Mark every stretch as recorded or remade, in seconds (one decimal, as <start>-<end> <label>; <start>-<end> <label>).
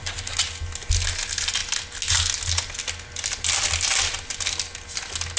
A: 0.0-5.4 recorded